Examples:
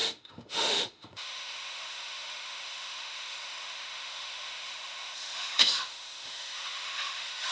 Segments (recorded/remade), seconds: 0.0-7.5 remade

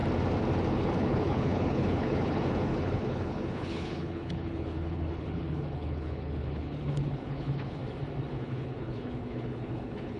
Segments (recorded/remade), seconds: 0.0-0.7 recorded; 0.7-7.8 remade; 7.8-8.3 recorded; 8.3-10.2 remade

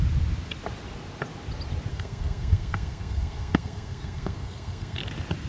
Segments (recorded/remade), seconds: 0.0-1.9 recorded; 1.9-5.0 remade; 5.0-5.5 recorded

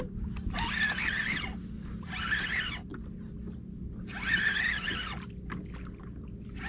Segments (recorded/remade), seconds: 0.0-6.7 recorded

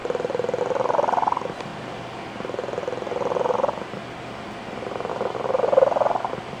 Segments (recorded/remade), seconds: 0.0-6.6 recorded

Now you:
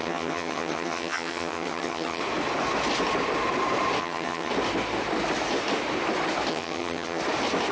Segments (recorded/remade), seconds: 0.0-2.2 remade; 2.2-4.0 recorded; 4.0-4.5 remade; 4.5-6.5 recorded; 6.5-7.2 remade; 7.2-7.7 recorded

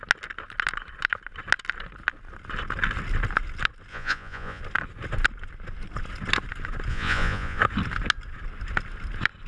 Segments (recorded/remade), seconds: 0.0-3.9 recorded; 3.9-4.6 remade; 4.6-6.9 recorded; 6.9-7.6 remade; 7.6-9.5 recorded